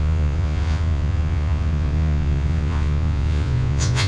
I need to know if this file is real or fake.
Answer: fake